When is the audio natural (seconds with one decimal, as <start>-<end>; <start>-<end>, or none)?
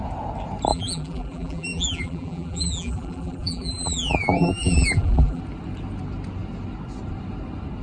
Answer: 0.0-0.7; 5.4-7.8